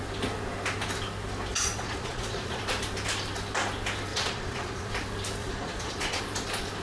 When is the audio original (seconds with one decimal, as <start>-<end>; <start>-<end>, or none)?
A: 0.0-1.5; 2.6-4.1; 4.9-5.4; 6.2-6.8